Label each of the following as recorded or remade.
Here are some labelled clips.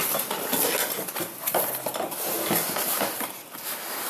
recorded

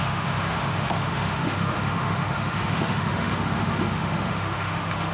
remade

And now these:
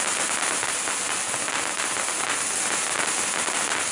recorded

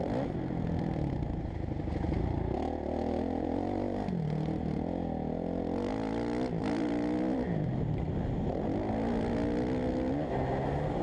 recorded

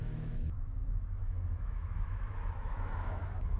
remade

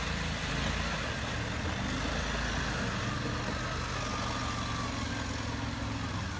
recorded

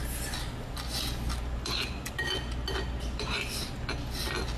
recorded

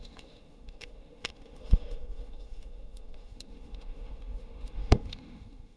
remade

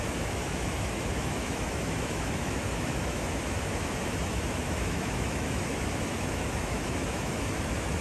remade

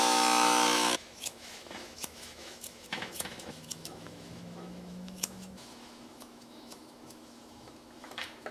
remade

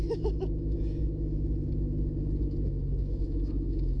remade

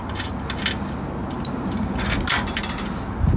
recorded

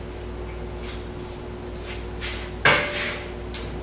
recorded